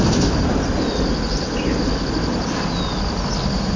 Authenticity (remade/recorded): recorded